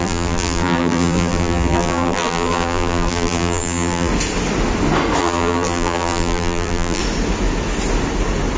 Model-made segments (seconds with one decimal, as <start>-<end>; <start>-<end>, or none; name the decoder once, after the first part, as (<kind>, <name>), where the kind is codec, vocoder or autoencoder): 0.0-4.1 (vocoder, BigVGAN v2); 5.2-7.0